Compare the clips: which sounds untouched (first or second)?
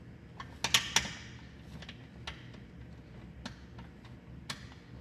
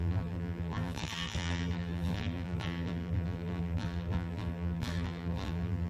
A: first